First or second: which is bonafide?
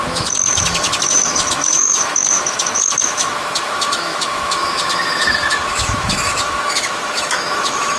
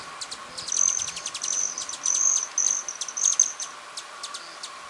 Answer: second